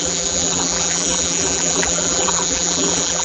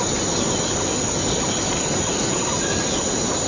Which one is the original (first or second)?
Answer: second